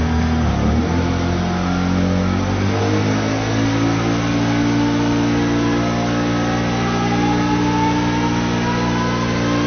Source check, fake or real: real